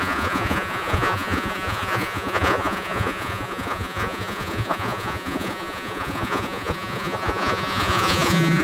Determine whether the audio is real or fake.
fake